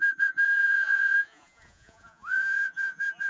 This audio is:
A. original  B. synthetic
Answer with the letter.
B